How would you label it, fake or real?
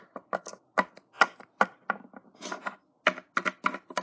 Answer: real